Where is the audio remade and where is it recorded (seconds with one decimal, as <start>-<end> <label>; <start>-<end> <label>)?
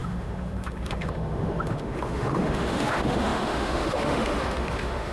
0.0-5.1 remade